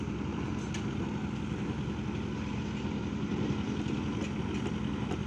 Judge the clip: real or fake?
real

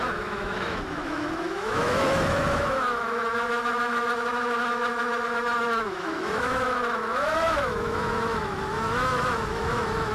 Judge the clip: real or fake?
fake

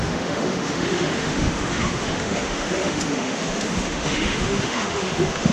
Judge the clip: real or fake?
fake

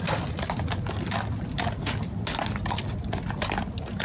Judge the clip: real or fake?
real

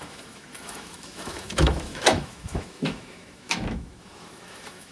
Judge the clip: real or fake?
fake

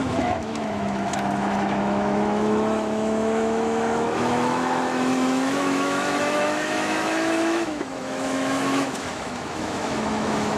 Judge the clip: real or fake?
fake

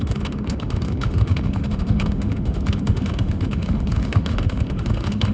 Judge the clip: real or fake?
fake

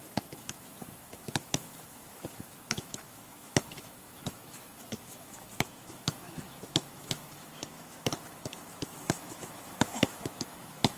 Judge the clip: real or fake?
fake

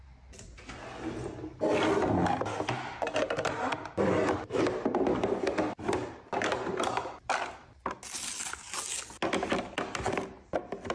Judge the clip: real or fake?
real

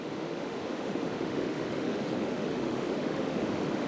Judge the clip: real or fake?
fake